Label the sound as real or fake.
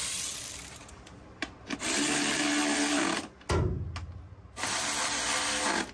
real